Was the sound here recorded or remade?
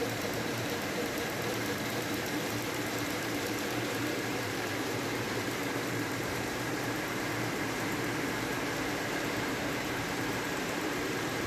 remade